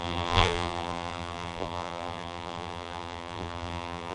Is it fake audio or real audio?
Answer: fake